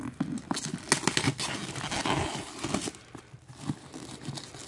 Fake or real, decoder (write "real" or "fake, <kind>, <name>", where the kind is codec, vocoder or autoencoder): real